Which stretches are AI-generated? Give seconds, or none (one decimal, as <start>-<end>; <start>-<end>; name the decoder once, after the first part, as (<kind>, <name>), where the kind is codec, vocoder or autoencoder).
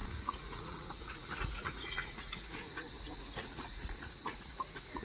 0.0-5.0 (vocoder, Vocos)